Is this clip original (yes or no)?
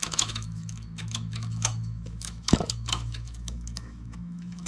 no